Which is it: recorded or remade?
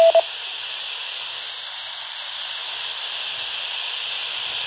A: recorded